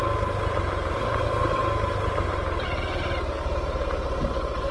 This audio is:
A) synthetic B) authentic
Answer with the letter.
B